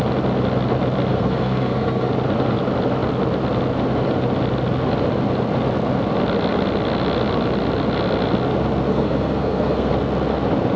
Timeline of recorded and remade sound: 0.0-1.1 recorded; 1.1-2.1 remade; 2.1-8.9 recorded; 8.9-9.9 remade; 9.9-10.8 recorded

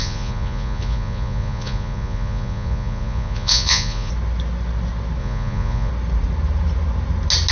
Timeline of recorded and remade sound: 0.0-4.1 remade; 4.1-5.2 recorded; 5.2-5.9 remade; 5.9-7.5 recorded

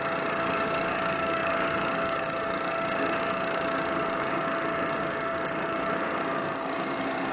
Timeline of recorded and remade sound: 0.0-7.3 remade

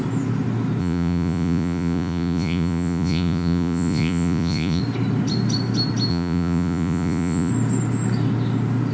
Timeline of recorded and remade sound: 0.0-0.8 recorded; 0.8-4.8 remade; 4.8-6.1 recorded; 6.1-7.5 remade; 7.5-8.9 recorded

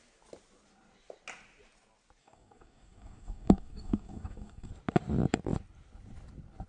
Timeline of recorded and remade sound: 0.0-2.2 recorded; 2.2-4.7 remade; 4.7-6.7 recorded

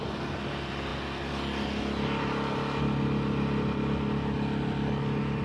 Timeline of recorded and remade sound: 0.0-5.4 recorded

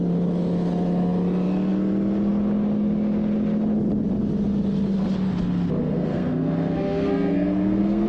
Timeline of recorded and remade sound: 0.0-5.8 recorded; 5.8-8.1 remade